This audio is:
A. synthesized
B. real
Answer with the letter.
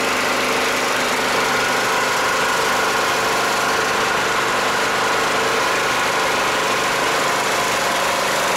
B